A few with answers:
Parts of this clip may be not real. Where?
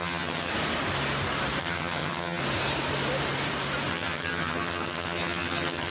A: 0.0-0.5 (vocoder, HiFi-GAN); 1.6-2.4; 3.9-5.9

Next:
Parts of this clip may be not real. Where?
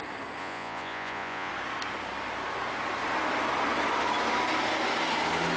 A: 0.4-1.5 (vocoder, Vocos)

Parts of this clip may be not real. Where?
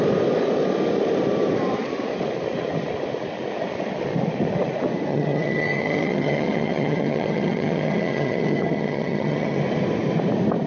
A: 5.1-9.6 (vocoder, HiFi-GAN)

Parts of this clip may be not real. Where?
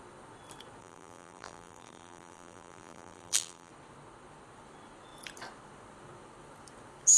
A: 0.8-3.7 (vocoder, BigVGAN v2)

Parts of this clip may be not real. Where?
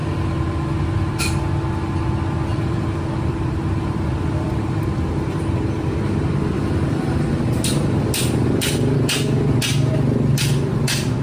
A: 2.5-7.4 (vocoder, BigVGAN v2)